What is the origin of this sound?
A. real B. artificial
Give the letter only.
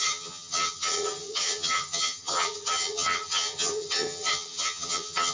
B